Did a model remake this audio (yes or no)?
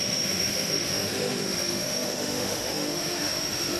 yes